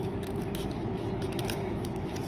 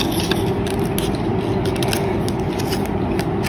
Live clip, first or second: second